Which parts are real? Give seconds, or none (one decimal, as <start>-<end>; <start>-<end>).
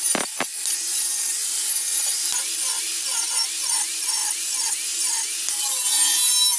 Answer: 0.0-6.6